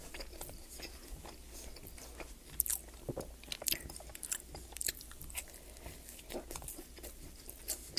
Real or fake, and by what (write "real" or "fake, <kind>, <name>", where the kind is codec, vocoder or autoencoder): real